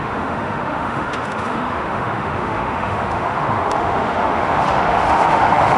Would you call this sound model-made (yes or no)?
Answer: yes